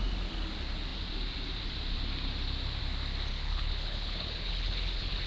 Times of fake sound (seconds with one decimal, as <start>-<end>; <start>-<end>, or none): 3.3-5.3